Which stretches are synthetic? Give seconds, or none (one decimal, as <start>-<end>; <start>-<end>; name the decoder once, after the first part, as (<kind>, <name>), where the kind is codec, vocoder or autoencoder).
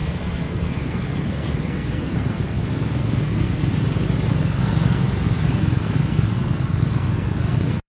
0.0-3.7 (codec, SNAC); 4.3-7.9